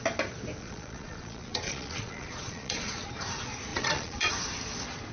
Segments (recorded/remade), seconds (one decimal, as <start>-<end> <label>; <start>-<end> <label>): 0.0-0.6 recorded; 0.6-3.1 remade; 3.1-3.7 recorded; 3.7-4.3 remade; 4.3-5.1 recorded